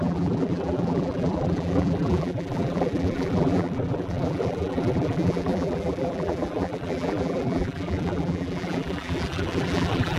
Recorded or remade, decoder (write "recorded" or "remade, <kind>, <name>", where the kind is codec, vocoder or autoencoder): remade, vocoder, BigVGAN v2